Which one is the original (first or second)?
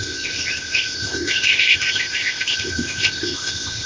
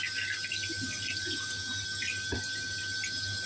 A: second